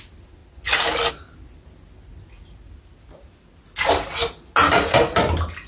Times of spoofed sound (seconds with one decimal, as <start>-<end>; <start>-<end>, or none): none